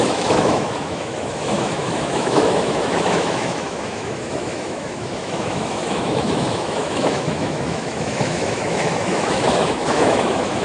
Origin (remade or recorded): remade